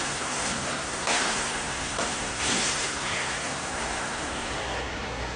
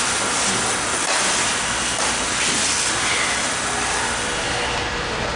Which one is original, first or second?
second